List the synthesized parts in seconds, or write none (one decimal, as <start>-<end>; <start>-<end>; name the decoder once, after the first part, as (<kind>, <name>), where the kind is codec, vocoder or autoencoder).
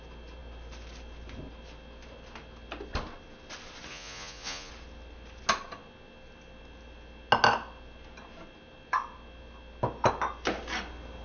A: 3.9-4.7 (vocoder, Vocos)